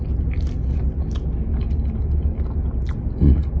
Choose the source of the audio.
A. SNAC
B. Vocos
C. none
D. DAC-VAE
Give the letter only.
C